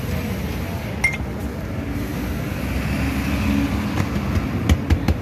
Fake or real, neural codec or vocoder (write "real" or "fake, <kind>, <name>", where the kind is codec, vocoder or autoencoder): real